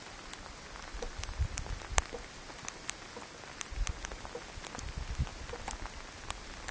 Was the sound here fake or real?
real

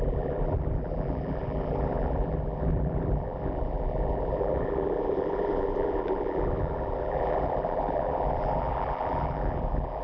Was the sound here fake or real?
fake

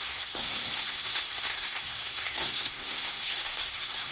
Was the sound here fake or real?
fake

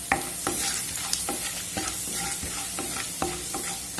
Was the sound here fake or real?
real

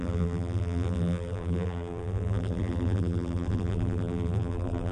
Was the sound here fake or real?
fake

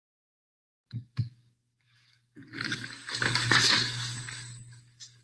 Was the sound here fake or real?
fake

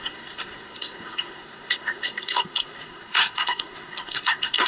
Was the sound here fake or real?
fake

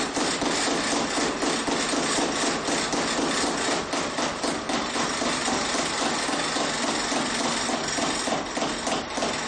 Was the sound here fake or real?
real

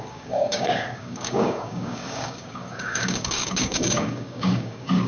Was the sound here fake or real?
fake